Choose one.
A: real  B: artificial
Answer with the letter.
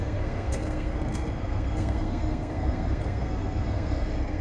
B